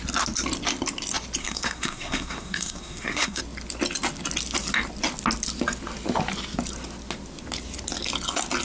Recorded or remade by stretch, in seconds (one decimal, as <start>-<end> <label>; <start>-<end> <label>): 0.0-1.4 recorded; 1.4-3.4 remade; 3.4-8.6 recorded